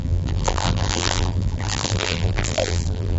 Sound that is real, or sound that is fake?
fake